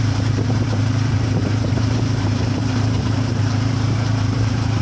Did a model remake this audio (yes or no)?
yes